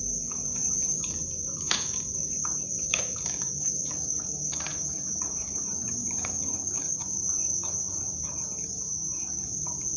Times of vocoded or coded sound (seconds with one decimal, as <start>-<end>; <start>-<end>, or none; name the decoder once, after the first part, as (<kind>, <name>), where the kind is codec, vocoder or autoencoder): 0.0-10.0 (codec, DAC)